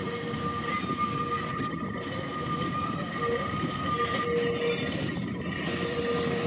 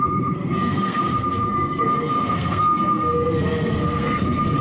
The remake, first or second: second